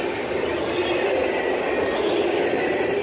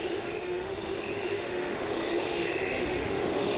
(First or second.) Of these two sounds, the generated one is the second